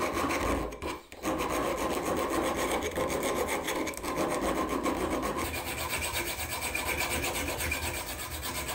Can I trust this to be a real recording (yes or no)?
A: yes